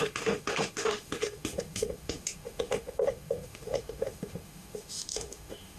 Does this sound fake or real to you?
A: fake